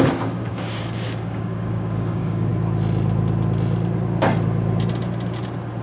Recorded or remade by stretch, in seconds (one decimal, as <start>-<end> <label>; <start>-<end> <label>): 0.0-2.5 remade; 2.5-5.8 recorded